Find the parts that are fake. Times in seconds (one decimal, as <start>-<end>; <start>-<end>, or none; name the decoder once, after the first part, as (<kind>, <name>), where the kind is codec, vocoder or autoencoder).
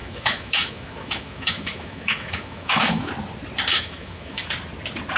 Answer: 0.0-3.1 (autoencoder, DAC-VAE); 3.7-4.5